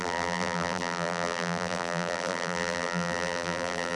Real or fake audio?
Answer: fake